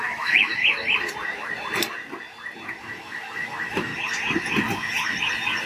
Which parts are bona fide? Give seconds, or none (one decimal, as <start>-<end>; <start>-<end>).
0.6-2.8; 3.9-5.7

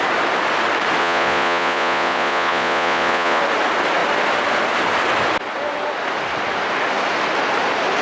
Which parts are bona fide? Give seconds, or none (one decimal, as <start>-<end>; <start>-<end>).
0.0-1.0; 3.4-8.0

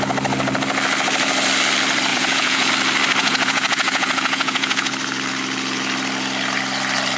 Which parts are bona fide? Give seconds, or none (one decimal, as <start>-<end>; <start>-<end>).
0.0-2.1; 2.7-3.2; 4.9-7.2

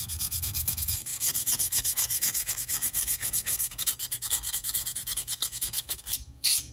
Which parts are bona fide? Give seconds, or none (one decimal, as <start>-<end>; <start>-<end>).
none

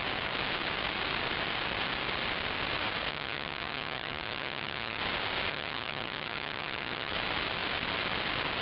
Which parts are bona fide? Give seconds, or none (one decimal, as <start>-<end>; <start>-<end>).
0.0-3.1; 5.0-5.5; 7.1-8.6

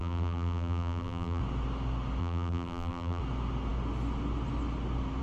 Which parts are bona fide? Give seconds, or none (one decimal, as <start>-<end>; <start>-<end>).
1.4-2.2; 3.2-5.2

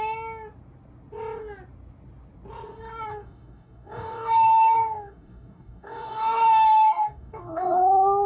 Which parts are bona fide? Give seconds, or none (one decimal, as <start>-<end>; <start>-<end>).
0.0-3.1; 7.8-8.3

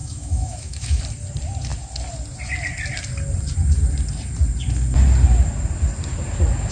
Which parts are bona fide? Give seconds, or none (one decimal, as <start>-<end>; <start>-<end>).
1.0-6.7